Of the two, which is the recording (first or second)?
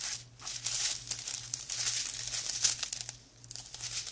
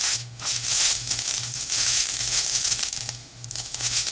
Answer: first